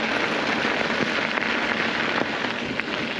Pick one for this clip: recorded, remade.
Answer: recorded